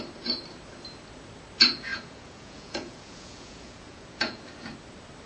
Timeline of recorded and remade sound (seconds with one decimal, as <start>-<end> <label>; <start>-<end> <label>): 0.0-1.9 recorded; 1.9-4.4 remade; 4.4-5.3 recorded